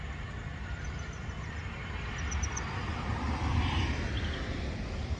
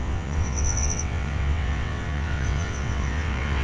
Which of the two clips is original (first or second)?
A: first